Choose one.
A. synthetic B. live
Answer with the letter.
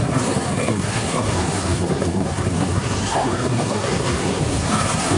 A